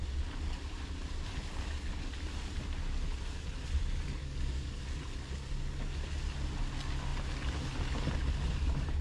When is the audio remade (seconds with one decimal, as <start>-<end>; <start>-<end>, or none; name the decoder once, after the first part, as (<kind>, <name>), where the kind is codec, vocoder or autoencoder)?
1.5-2.1 (codec, DAC); 4.2-4.9